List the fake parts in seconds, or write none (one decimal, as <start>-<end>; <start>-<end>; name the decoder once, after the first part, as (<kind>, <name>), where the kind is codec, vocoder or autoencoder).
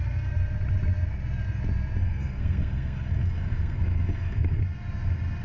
2.0-4.6 (codec, SNAC)